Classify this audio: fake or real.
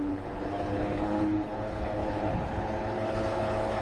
fake